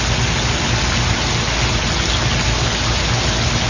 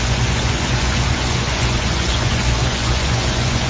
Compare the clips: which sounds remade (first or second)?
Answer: second